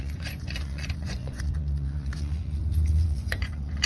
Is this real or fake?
fake